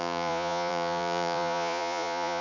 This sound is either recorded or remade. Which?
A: remade